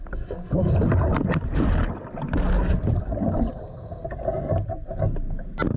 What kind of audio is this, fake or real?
real